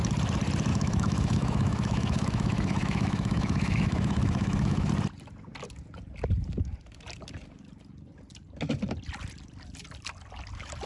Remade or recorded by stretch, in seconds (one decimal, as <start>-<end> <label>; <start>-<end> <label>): 0.0-0.7 recorded; 0.7-4.9 remade; 4.9-10.9 recorded